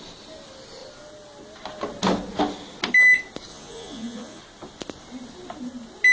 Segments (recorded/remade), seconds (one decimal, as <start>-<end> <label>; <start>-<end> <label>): 0.0-3.5 recorded; 3.5-4.4 remade; 4.4-6.1 recorded